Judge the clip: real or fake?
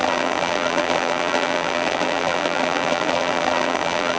fake